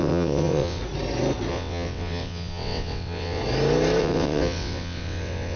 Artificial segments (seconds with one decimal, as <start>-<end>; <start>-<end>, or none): 0.0-0.8; 1.5-3.4; 4.0-5.6